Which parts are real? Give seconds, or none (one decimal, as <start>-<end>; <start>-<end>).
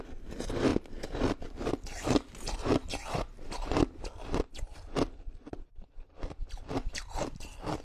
0.7-1.4